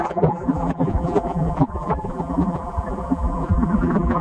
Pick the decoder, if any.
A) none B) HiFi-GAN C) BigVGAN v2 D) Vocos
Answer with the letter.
C